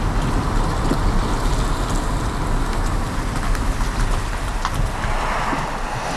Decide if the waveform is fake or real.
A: real